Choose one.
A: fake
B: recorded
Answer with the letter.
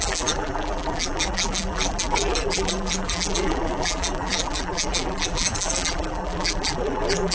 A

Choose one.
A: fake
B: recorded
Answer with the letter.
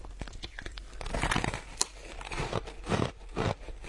A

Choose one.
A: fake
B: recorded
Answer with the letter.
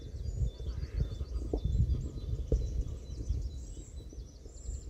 B